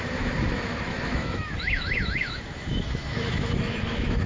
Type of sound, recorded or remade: remade